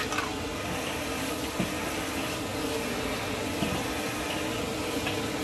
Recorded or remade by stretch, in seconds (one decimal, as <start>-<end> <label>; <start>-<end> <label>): 0.0-5.4 recorded